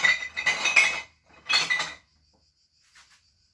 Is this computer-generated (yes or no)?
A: no